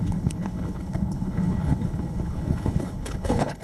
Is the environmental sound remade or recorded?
remade